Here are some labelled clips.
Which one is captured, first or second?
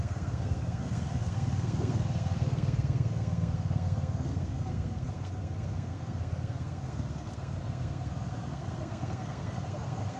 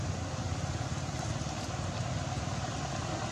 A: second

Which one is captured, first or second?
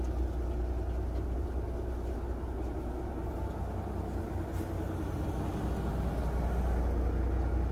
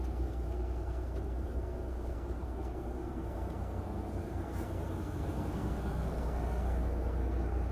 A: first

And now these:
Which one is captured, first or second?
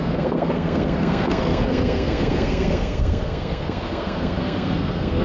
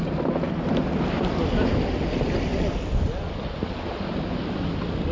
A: second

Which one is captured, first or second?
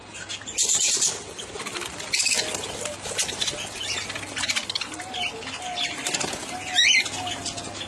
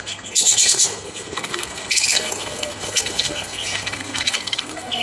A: first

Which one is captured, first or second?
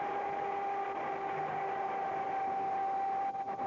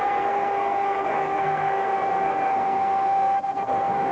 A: first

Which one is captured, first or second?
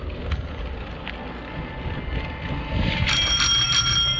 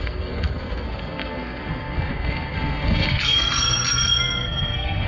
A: first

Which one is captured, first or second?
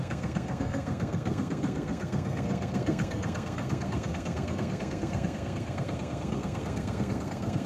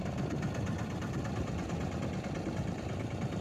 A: second